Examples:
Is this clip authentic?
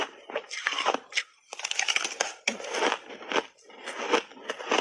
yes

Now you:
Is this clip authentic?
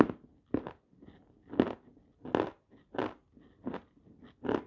yes